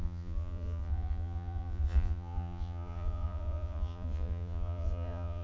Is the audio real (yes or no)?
no